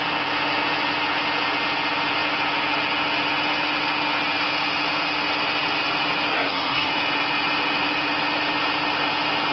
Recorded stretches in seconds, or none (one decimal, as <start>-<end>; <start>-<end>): 0.0-6.3; 6.9-9.5